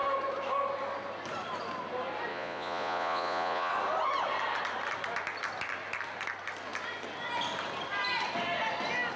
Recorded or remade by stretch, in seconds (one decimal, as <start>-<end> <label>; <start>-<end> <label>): 0.0-2.3 recorded; 2.3-3.7 remade; 3.7-9.2 recorded